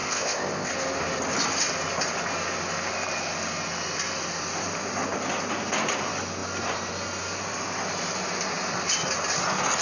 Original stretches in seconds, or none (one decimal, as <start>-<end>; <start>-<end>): 0.7-9.8